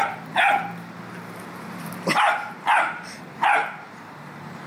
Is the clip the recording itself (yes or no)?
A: no